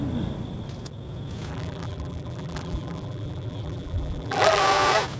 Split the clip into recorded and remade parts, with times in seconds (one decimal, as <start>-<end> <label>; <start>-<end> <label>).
0.0-1.5 recorded; 1.5-4.6 remade; 4.6-5.2 recorded